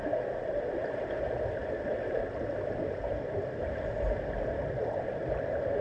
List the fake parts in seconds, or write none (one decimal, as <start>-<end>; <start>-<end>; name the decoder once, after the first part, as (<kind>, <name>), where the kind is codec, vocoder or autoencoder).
0.0-5.8 (vocoder, BigVGAN v2)